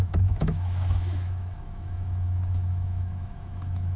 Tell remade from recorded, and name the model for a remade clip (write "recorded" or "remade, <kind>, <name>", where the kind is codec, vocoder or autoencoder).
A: remade, autoencoder, DAC-VAE